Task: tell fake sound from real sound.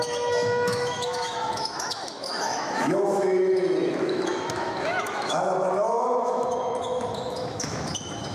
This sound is fake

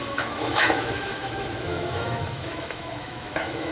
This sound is fake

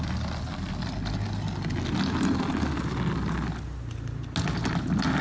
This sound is real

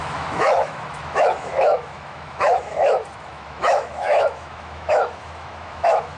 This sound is fake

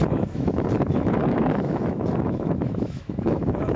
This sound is fake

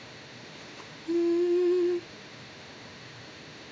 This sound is fake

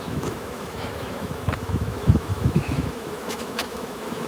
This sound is fake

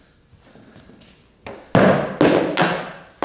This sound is real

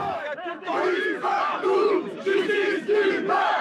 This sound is fake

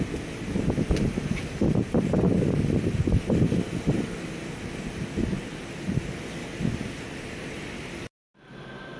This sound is real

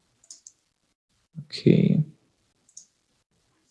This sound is real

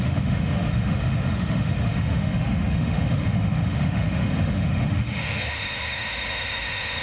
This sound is fake